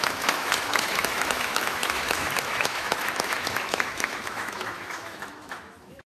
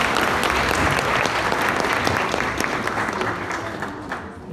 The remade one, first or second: first